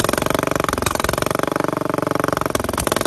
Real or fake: real